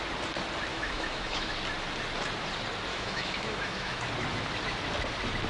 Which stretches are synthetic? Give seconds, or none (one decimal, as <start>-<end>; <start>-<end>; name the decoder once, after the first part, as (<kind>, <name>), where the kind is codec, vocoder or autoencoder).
0.7-1.5 (autoencoder, DAC-VAE); 2.9-4.0